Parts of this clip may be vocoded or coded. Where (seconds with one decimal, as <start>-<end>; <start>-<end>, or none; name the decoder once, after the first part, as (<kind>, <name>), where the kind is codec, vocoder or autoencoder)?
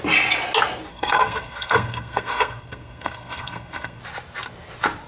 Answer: 0.9-4.0 (codec, SNAC)